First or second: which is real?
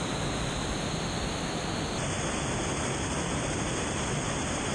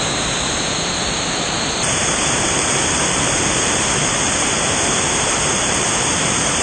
first